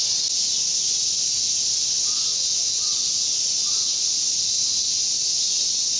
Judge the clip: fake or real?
real